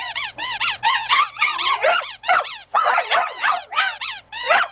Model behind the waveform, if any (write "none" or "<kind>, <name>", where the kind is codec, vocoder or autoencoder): vocoder, WaveNeXt